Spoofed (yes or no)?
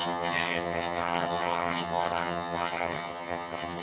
yes